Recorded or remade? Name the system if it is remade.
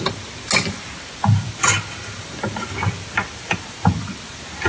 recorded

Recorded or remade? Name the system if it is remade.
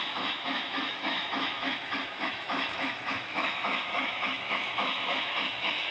remade, autoencoder, DAC-VAE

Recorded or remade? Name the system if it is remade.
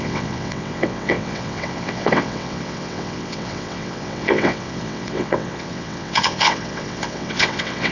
remade, vocoder, WaveNeXt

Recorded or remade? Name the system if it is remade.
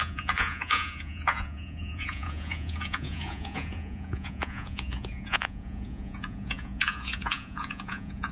remade, vocoder, Vocos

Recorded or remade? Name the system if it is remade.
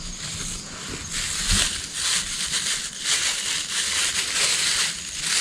recorded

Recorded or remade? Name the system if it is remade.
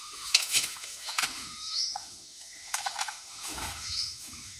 remade, autoencoder, DAC-VAE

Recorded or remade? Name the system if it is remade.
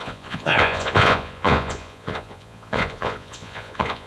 remade, vocoder, Vocos